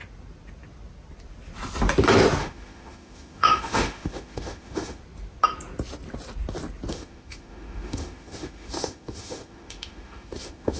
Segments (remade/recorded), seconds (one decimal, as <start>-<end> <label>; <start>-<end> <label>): 0.0-2.4 recorded; 2.4-5.0 remade; 5.0-6.9 recorded; 6.9-10.8 remade